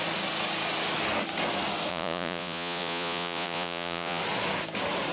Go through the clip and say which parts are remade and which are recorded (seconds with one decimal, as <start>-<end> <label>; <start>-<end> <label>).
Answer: 0.0-1.9 recorded; 1.9-4.2 remade; 4.2-5.1 recorded